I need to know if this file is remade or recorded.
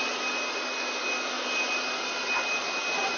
recorded